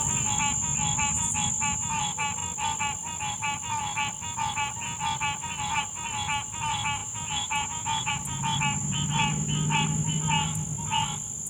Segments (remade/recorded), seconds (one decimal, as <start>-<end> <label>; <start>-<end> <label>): 0.0-7.0 recorded; 7.0-8.1 remade; 8.1-11.5 recorded